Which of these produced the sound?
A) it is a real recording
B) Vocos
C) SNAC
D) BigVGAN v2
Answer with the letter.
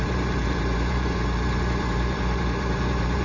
D